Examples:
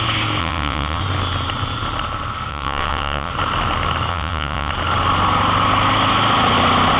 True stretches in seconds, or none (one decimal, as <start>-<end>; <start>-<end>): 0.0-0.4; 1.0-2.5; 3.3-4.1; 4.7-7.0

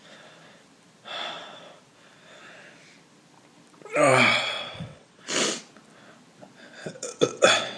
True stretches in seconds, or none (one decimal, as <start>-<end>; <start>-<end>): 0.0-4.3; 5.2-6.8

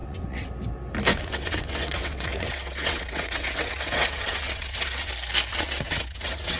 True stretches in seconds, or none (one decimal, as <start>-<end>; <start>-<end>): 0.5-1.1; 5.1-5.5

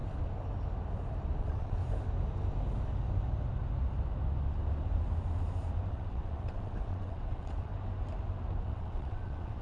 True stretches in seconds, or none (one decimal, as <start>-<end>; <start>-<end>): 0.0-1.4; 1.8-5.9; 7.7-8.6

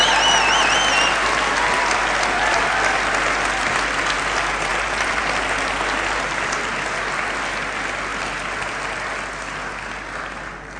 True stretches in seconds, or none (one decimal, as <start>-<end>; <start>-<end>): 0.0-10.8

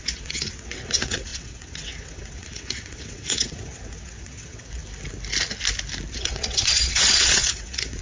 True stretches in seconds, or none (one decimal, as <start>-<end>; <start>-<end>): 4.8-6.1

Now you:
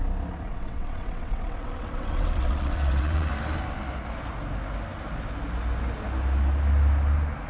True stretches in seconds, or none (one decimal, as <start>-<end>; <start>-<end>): 0.0-0.5; 3.3-7.5